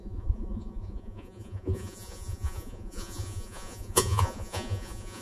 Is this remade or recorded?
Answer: remade